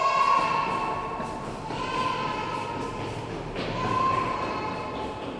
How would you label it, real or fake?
real